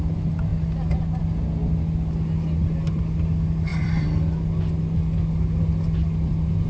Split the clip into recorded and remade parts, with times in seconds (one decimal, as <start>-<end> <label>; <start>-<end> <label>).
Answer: 0.0-3.7 recorded; 3.7-4.2 remade; 4.2-6.7 recorded